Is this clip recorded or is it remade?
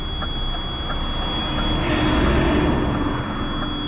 recorded